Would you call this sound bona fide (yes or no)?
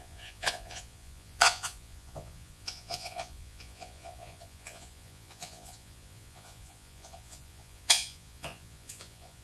no